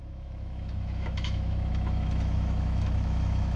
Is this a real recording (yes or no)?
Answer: no